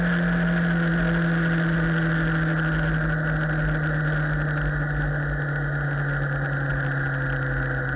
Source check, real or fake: real